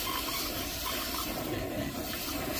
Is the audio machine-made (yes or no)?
no